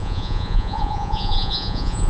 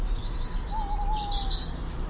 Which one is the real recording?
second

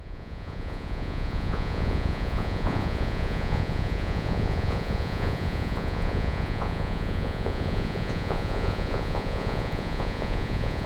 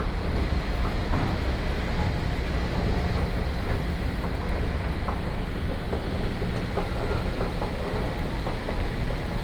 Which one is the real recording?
second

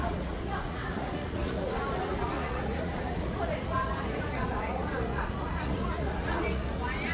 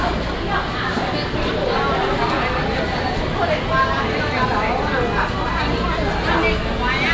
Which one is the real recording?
second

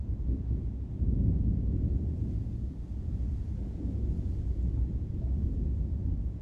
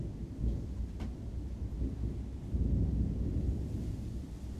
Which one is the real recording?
second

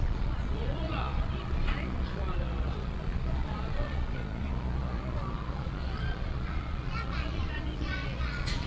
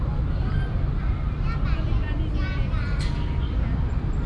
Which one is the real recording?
second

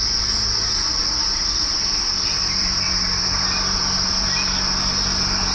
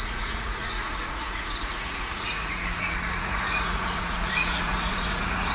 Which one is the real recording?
first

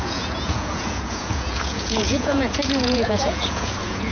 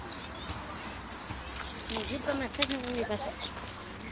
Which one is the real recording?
second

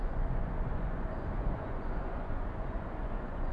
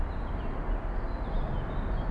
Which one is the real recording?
second